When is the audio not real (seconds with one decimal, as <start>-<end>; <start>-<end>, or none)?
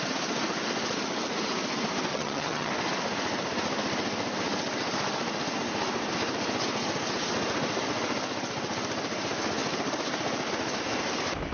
2.1-2.7